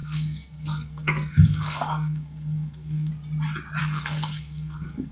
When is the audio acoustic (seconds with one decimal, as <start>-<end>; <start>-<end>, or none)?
3.1-3.8